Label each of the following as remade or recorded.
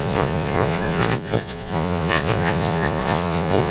remade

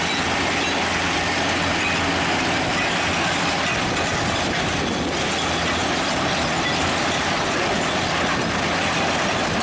recorded